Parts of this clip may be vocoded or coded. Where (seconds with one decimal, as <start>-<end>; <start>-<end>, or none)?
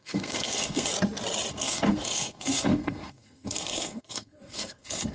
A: 0.0-0.9; 1.5-5.1